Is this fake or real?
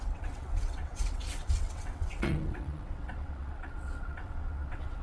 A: fake